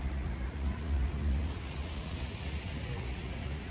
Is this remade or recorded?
remade